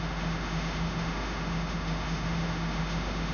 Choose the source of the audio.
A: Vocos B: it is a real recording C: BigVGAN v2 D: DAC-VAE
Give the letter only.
D